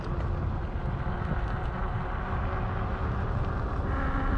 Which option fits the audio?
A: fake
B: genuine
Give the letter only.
B